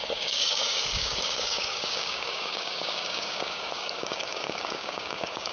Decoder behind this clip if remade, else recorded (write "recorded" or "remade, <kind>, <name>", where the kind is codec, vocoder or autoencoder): remade, codec, DAC